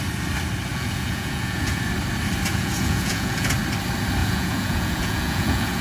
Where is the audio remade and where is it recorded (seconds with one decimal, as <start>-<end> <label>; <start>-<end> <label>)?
0.0-0.7 recorded; 0.7-1.8 remade; 1.8-2.5 recorded; 2.5-3.5 remade; 3.5-4.2 recorded; 4.2-5.8 remade